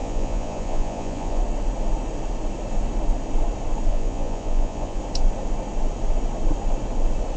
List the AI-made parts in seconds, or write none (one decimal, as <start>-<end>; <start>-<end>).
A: 0.0-1.4; 3.9-5.0

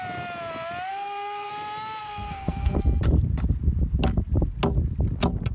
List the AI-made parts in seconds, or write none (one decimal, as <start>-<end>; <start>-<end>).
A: 0.9-1.5; 2.0-2.8

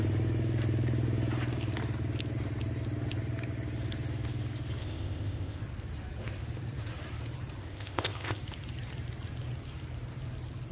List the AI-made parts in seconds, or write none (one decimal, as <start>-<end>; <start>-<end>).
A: 4.8-5.6; 7.6-8.4

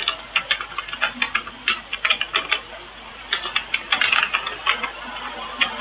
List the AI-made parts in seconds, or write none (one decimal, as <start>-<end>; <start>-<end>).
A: none

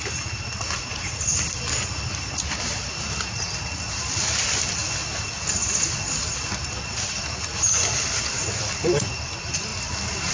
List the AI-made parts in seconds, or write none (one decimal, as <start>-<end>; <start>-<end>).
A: 0.9-1.4

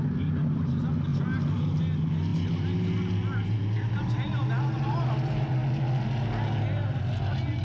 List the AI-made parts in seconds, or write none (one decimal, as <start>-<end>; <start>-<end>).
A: none

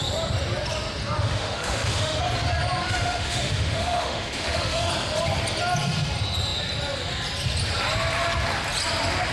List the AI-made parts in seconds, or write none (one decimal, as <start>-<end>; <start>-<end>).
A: 1.2-2.2; 2.8-4.9